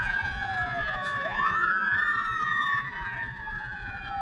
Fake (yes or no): yes